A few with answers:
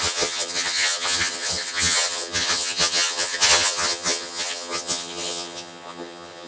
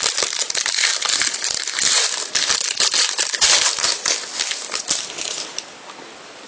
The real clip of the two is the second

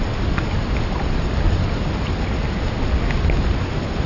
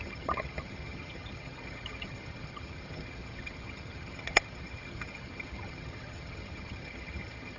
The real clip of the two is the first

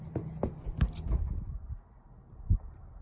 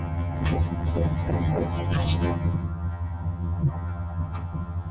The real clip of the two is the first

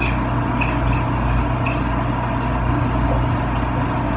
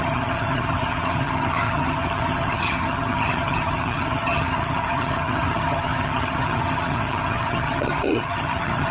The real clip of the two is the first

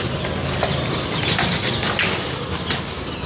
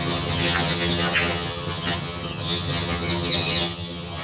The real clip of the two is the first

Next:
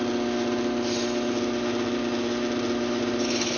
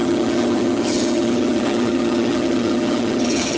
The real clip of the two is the first